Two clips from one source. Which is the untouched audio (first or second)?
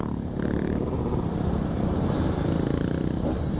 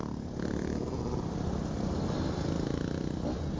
second